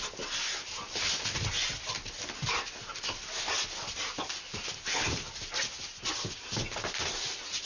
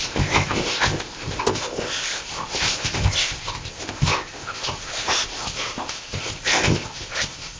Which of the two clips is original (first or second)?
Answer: first